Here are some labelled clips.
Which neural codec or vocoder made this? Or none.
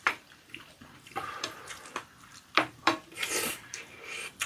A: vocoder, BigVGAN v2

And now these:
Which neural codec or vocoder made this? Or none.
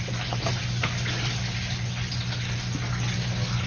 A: none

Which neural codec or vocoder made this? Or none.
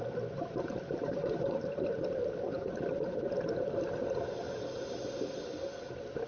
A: none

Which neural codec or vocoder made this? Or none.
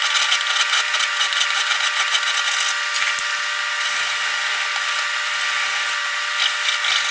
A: none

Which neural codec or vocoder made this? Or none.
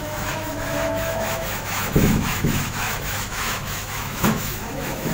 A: autoencoder, DAC-VAE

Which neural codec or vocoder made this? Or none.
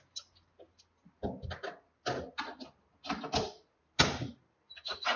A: none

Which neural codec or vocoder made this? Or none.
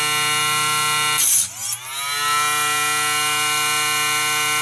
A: none